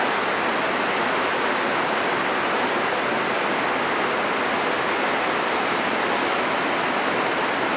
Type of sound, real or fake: real